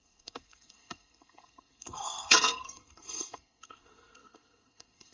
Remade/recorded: remade